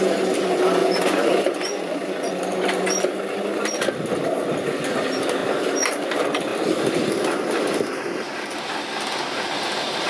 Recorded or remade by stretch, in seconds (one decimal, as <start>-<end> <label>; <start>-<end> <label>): 0.0-0.8 recorded; 0.8-2.3 remade; 2.3-10.1 recorded